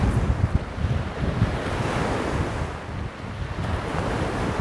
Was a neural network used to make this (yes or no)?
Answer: no